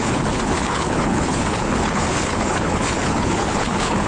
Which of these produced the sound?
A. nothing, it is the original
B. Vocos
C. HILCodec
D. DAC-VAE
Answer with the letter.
C